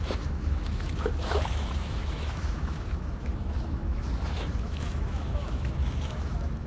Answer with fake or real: fake